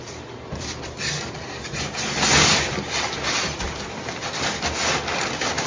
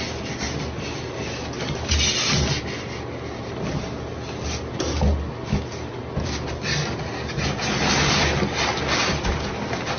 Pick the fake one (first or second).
first